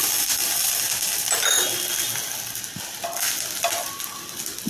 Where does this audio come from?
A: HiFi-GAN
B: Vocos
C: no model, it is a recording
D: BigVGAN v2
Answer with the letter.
C